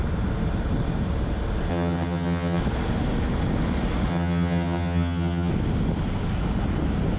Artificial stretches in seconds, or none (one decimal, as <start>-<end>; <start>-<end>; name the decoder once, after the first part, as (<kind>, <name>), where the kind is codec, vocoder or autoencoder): 1.7-2.6 (vocoder, HiFi-GAN); 4.1-5.5